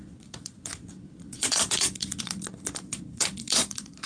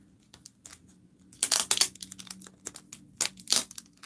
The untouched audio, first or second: second